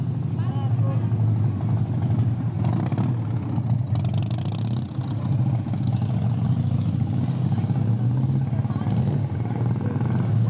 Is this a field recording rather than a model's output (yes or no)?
yes